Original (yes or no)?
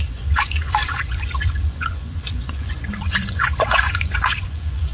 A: no